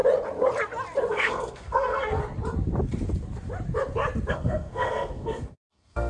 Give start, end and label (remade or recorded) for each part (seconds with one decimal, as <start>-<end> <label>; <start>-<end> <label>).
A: 0.0-1.1 recorded; 1.1-2.2 remade; 2.2-4.3 recorded; 4.3-6.1 remade